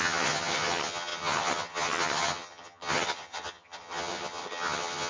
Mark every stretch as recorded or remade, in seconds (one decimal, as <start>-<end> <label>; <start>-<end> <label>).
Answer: 0.0-5.1 remade